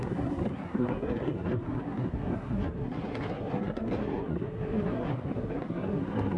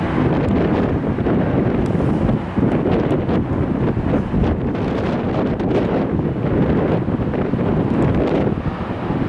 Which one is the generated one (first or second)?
first